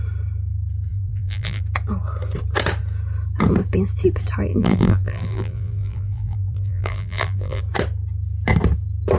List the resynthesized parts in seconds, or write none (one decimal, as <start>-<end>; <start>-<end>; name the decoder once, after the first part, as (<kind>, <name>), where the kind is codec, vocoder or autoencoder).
0.9-1.6 (vocoder, BigVGAN v2); 4.5-7.6